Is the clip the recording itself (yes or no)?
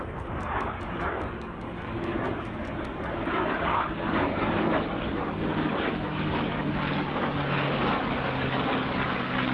no